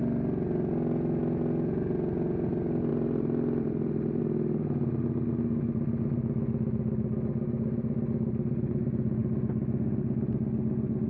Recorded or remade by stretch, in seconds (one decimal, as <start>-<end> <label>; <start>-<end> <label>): 0.0-2.9 recorded; 2.9-4.2 remade; 4.2-11.1 recorded